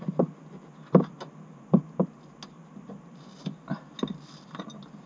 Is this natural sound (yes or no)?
yes